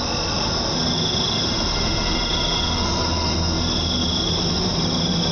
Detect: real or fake real